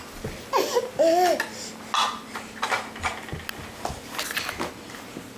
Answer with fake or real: real